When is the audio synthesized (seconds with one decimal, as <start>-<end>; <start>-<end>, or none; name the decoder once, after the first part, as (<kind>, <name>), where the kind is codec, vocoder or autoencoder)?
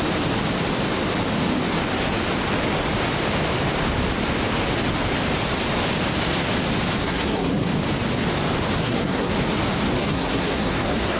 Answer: 7.0-7.7 (codec, SNAC); 8.8-9.3; 10.0-11.2